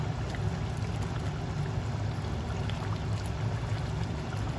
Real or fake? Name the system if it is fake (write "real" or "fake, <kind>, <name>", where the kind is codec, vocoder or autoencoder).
real